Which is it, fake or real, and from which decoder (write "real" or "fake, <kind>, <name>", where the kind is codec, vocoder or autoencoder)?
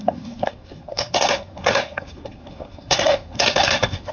fake, codec, SNAC